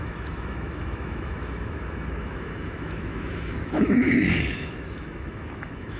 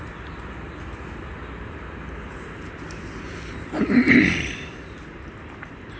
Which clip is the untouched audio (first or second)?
second